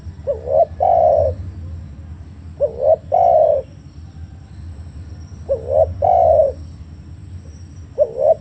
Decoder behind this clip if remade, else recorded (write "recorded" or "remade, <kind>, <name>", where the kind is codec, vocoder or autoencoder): recorded